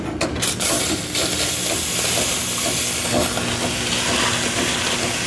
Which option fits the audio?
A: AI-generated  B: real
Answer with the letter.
B